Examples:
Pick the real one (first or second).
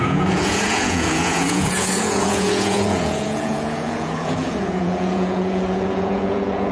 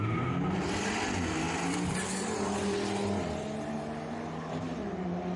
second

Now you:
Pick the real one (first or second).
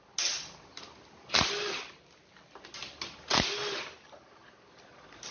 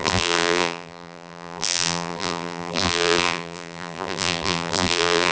first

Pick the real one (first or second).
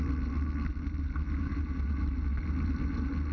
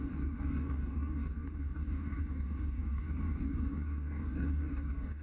first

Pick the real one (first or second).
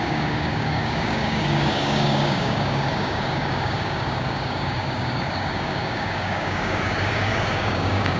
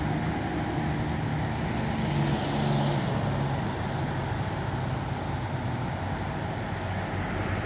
second